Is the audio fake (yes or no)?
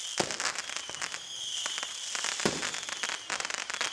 no